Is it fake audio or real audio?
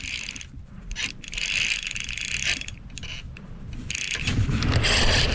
real